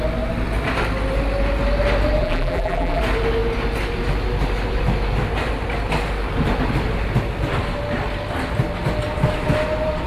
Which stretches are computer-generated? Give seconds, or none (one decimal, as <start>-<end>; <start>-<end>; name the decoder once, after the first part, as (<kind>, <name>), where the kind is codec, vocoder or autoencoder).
2.2-3.0 (vocoder, BigVGAN v2)